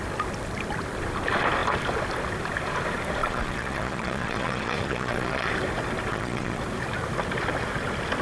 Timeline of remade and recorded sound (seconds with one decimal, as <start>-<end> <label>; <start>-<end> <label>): 0.0-3.2 recorded; 3.2-5.5 remade; 5.5-6.1 recorded; 6.1-6.6 remade; 6.6-8.2 recorded